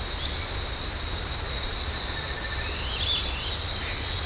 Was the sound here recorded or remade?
recorded